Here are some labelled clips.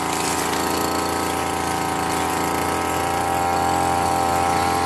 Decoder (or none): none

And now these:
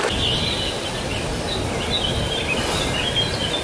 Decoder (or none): none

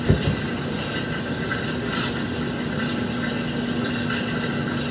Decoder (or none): none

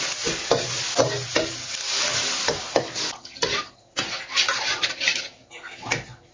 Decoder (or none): none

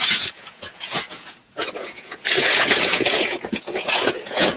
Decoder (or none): vocoder, Vocos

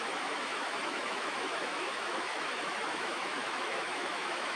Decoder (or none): autoencoder, DAC-VAE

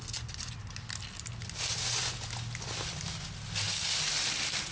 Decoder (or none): none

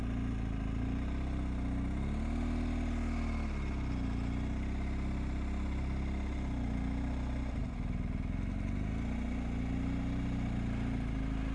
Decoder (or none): none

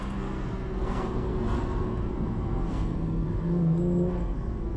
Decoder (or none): codec, SNAC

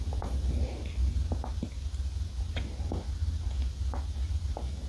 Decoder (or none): none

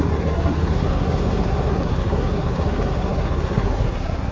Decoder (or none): codec, SNAC